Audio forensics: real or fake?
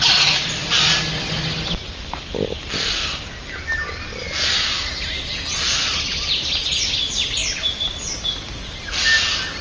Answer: real